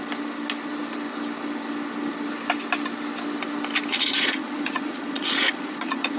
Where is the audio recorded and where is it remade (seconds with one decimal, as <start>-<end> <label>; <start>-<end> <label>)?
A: 0.0-3.9 recorded; 3.9-6.2 remade